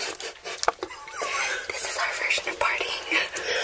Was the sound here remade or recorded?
recorded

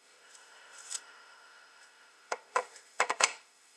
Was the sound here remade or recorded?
remade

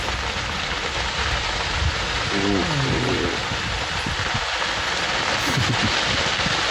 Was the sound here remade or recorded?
recorded